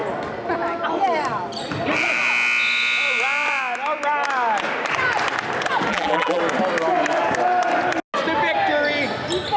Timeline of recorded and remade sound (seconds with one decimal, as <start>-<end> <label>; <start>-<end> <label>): 0.0-5.9 recorded; 5.9-6.4 remade; 6.4-9.6 recorded